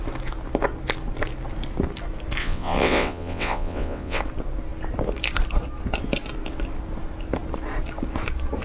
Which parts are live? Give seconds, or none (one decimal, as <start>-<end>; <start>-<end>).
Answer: 0.0-2.4; 4.2-8.6